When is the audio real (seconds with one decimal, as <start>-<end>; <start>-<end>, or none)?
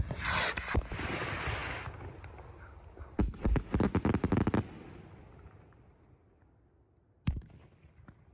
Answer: 0.0-8.3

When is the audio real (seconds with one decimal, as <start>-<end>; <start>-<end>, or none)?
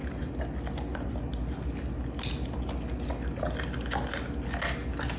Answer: 0.0-5.2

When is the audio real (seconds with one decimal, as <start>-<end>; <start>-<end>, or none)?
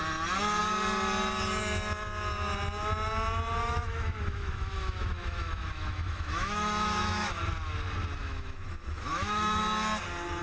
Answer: 0.0-3.6; 7.4-8.2; 9.6-10.4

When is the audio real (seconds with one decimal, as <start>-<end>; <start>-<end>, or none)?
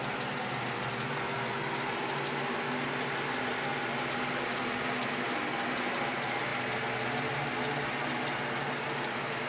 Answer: 0.0-9.5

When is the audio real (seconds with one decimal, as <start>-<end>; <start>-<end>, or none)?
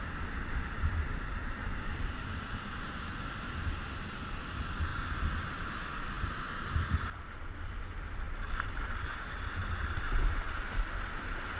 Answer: 0.0-1.6; 3.0-4.9; 5.6-11.6